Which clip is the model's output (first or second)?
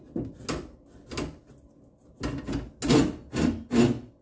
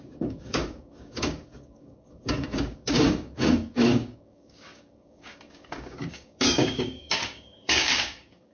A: second